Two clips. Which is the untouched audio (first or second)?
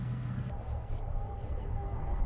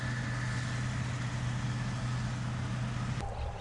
second